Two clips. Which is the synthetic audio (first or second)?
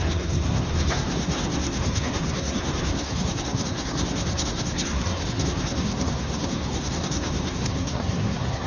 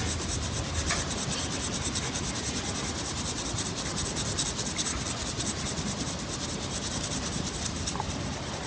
first